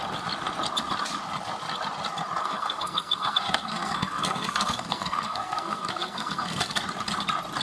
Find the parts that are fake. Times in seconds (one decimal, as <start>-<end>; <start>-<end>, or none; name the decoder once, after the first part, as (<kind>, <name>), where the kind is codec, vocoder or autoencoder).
2.4-6.8 (codec, SNAC)

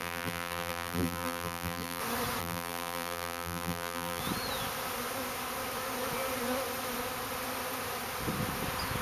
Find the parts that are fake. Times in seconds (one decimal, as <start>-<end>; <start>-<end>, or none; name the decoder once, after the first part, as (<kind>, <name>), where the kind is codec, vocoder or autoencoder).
0.0-2.0 (vocoder, BigVGAN v2); 2.4-4.2

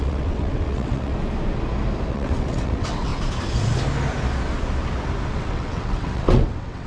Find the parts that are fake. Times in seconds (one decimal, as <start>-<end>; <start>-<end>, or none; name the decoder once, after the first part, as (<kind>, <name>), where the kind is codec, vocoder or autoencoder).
0.0-1.1 (vocoder, WaveNeXt); 2.1-3.1; 5.3-6.9

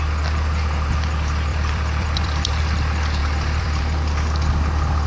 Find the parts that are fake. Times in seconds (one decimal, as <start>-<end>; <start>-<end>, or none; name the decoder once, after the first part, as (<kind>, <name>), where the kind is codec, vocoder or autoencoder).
1.5-2.6 (vocoder, BigVGAN v2); 3.2-3.8

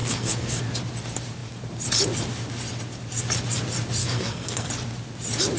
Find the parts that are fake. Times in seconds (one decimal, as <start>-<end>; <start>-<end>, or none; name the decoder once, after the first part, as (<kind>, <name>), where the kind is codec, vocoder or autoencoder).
0.0-0.6 (codec, SNAC); 4.0-4.7

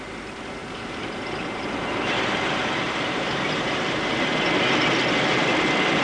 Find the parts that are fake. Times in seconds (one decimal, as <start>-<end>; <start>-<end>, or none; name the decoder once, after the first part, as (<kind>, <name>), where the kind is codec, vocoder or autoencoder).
0.6-4.2 (vocoder, BigVGAN v2)

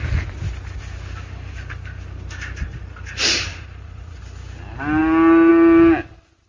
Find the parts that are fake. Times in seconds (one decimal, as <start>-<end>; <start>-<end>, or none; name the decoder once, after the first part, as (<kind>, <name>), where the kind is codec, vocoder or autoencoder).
3.5-4.2 (vocoder, Vocos)